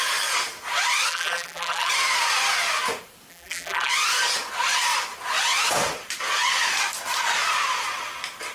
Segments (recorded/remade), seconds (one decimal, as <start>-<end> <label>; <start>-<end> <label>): 0.0-1.1 recorded; 1.1-1.9 remade; 1.9-3.3 recorded; 3.3-3.9 remade; 3.9-8.5 recorded